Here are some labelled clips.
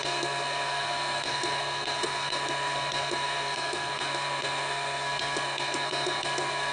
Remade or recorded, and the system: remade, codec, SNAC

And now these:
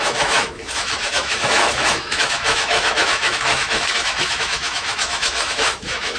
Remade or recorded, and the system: remade, autoencoder, DAC-VAE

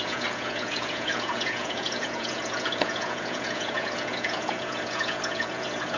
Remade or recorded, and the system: remade, vocoder, Vocos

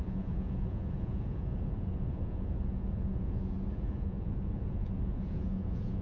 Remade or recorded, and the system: remade, vocoder, Vocos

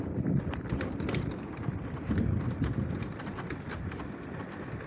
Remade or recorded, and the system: recorded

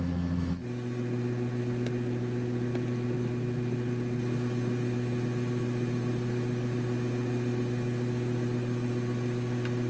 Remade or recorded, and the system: recorded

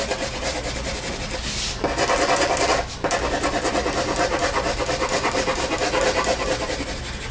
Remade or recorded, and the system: recorded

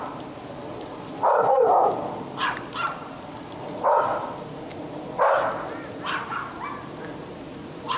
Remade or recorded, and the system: recorded